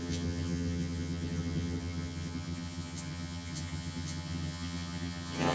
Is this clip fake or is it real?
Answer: fake